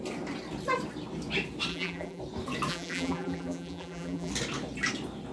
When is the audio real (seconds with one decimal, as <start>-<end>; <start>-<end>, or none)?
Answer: 0.0-1.7; 2.2-2.7; 4.3-5.3